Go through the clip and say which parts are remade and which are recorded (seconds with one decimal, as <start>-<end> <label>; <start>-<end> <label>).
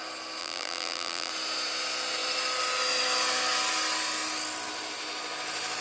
0.0-0.4 recorded; 0.4-1.3 remade; 1.3-5.8 recorded